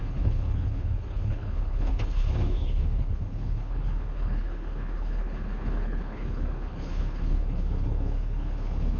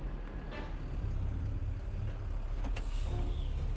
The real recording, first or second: second